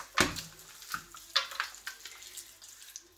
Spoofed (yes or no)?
no